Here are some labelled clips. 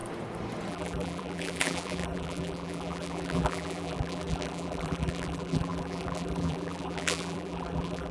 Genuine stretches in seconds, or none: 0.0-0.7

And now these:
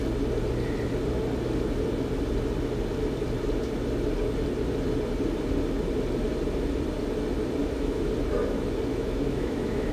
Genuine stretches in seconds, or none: 0.0-7.6; 8.1-8.9

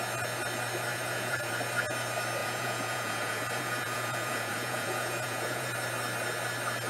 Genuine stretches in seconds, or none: 0.0-0.9; 1.5-2.4; 5.7-6.9

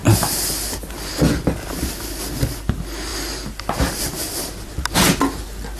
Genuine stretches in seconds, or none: 0.0-5.8

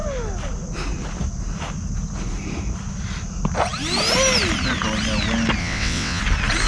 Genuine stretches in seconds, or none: 0.0-5.6; 6.2-6.7

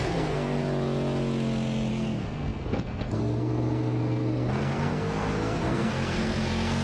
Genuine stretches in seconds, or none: 0.6-1.9

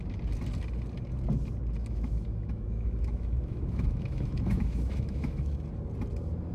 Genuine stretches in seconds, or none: 0.0-1.8; 5.6-6.5

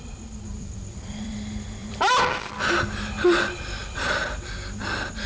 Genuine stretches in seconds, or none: 0.0-0.5; 1.3-1.8; 2.5-3.8; 4.5-5.3